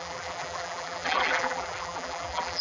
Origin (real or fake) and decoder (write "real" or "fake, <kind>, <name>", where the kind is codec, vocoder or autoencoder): fake, vocoder, BigVGAN v2